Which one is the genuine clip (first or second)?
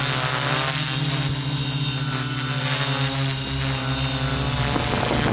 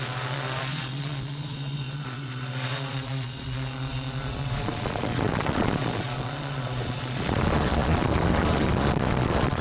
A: first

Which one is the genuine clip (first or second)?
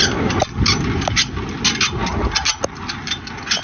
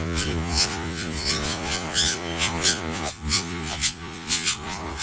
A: first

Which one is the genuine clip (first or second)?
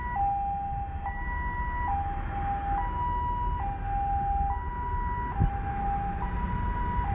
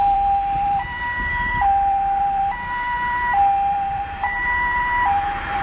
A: first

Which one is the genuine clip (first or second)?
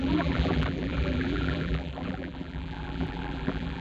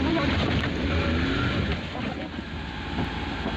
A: second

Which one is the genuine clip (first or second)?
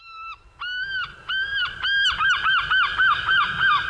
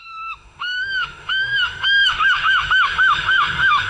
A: first